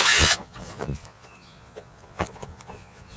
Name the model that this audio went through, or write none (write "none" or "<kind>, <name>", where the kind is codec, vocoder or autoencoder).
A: vocoder, Vocos